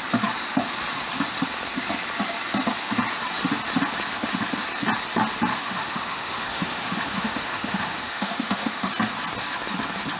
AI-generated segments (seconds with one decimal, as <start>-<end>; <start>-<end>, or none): 5.5-8.9